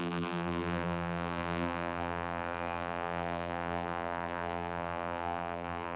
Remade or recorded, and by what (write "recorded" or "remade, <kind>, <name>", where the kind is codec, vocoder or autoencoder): remade, vocoder, BigVGAN v2